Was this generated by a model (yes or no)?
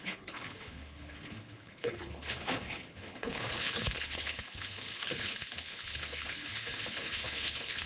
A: yes